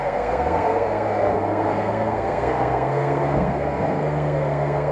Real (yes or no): no